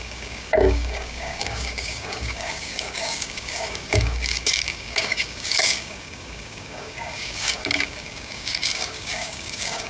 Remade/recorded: remade